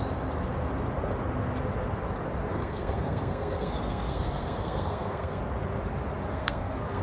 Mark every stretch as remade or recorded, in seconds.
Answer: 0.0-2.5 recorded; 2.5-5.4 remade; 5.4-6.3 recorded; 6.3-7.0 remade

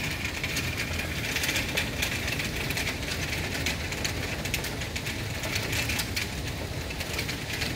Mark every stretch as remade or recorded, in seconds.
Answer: 0.0-3.1 remade; 3.1-5.6 recorded; 5.6-7.8 remade